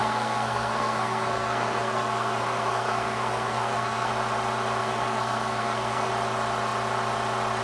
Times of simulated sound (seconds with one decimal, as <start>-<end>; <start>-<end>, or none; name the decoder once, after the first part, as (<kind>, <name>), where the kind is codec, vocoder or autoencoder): 0.0-4.1 (codec, SNAC); 4.8-6.1

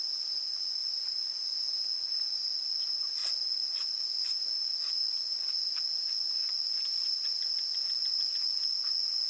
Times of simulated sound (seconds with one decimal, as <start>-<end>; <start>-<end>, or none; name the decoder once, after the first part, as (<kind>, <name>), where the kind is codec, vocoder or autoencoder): 3.2-4.1 (vocoder, Vocos)

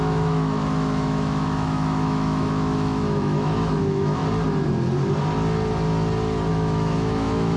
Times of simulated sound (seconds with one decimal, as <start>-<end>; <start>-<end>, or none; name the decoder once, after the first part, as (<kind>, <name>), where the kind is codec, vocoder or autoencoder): 0.0-4.2 (autoencoder, DAC-VAE); 6.5-7.6

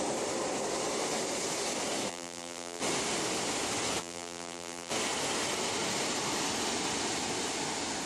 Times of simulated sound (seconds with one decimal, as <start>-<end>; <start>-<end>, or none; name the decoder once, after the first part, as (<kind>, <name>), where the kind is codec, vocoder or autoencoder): 2.1-2.8 (vocoder, BigVGAN v2); 4.0-4.9

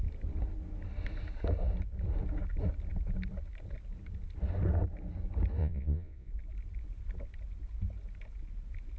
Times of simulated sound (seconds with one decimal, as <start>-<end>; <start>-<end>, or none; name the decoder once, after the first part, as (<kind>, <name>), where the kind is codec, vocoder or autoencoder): 5.6-6.3 (vocoder, Vocos)

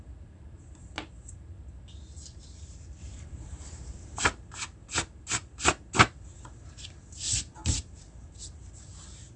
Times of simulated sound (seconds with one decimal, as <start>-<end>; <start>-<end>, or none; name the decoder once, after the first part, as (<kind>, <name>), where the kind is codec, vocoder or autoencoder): 3.0-4.2 (vocoder, BigVGAN v2)

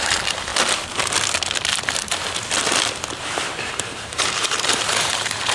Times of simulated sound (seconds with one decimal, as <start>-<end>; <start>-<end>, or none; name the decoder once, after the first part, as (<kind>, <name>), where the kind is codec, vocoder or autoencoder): 0.0-0.5 (vocoder, BigVGAN v2); 3.7-5.5

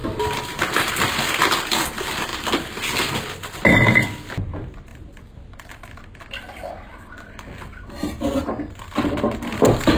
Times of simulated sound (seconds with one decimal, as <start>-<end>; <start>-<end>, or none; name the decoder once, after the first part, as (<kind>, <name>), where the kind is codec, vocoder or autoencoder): 0.0-0.9 (vocoder, BigVGAN v2); 4.9-9.0